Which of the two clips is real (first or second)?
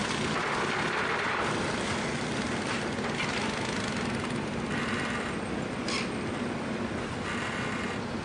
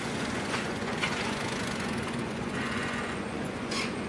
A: first